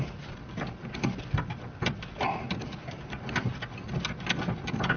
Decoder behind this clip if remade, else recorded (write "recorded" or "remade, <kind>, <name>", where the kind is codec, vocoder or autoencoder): recorded